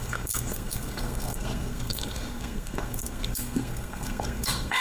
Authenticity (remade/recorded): remade